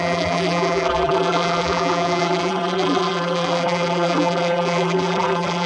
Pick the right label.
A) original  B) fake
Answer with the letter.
B